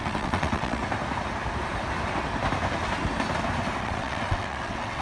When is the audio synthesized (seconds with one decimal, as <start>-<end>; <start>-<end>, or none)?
0.0-0.8; 3.8-5.0